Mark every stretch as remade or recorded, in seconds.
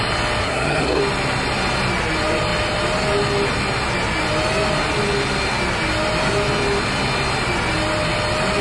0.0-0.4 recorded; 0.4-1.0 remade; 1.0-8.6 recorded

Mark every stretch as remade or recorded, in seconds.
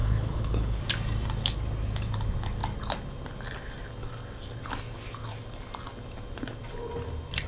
0.0-0.8 remade; 0.8-7.5 recorded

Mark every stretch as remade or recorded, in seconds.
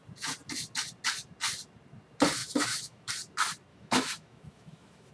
0.0-2.4 recorded; 2.4-3.1 remade; 3.1-3.7 recorded; 3.7-5.1 remade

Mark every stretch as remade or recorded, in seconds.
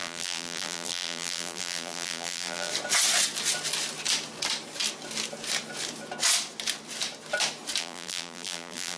0.0-2.7 remade; 2.7-7.8 recorded; 7.8-9.0 remade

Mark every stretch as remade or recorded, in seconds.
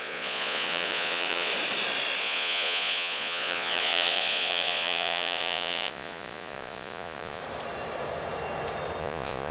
0.0-1.5 remade; 1.5-2.2 recorded; 2.2-7.4 remade; 7.4-9.0 recorded; 9.0-9.5 remade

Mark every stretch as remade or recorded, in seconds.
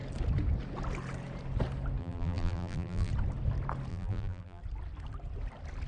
0.0-2.0 recorded; 2.0-3.1 remade; 3.1-3.9 recorded; 3.9-4.6 remade; 4.6-5.9 recorded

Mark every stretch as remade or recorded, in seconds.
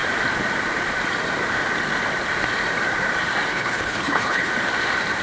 0.0-3.5 recorded; 3.5-4.5 remade; 4.5-5.2 recorded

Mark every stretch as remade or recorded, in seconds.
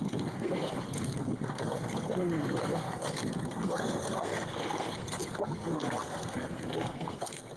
0.0-7.6 remade